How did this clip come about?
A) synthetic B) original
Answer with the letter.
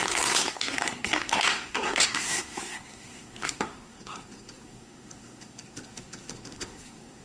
A